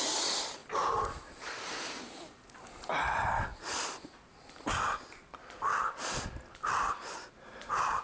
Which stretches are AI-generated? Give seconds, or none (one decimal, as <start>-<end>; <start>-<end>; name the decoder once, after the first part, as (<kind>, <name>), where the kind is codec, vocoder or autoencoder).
none